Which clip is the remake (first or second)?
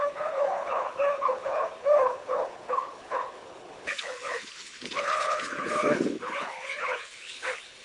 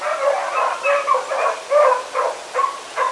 first